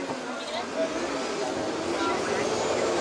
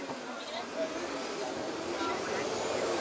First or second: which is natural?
first